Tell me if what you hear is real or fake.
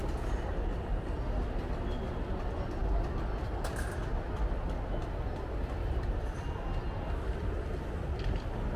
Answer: real